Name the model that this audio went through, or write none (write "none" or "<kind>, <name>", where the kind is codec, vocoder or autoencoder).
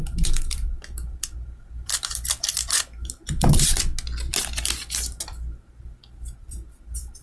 vocoder, BigVGAN v2